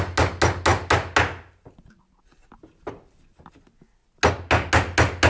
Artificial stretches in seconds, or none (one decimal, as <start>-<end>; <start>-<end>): none